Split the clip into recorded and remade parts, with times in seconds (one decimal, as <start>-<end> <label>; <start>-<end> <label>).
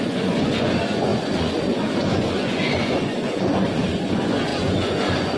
0.0-5.4 remade